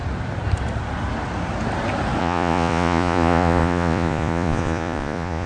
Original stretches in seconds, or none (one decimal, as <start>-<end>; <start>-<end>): 0.0-2.2